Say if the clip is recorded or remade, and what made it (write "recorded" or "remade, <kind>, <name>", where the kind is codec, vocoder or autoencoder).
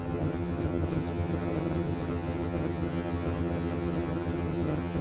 remade, vocoder, HiFi-GAN